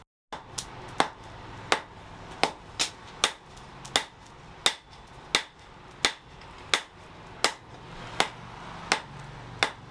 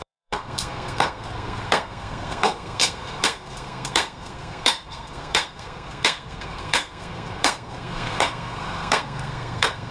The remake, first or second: second